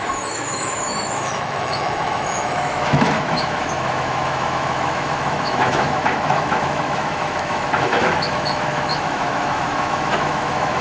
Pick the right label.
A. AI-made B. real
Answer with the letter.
A